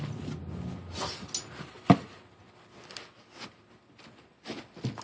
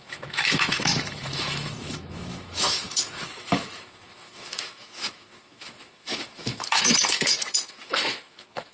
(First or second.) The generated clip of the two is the second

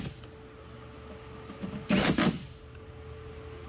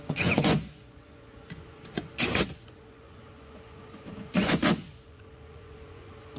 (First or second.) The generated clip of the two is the second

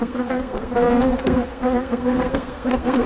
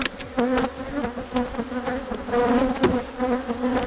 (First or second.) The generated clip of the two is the first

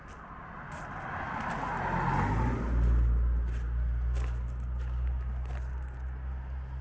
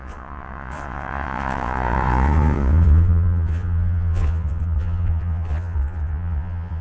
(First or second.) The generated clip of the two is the second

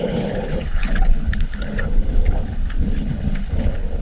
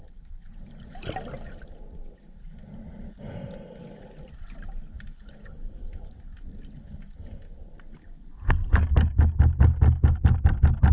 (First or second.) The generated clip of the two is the first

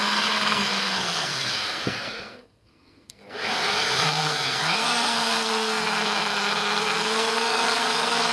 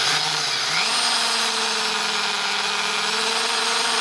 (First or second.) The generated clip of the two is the first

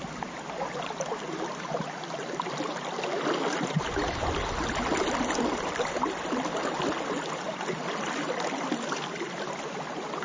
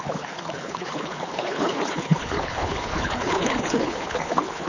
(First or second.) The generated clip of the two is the second